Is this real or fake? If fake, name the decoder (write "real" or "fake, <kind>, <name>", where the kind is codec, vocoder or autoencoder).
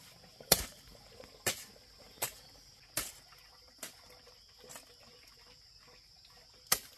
real